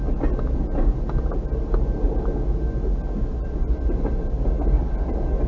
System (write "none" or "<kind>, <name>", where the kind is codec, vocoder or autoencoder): none